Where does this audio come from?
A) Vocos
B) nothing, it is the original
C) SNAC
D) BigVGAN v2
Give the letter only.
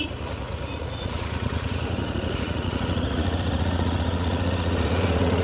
A